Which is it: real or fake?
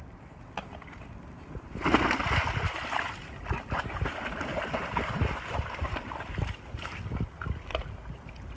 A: real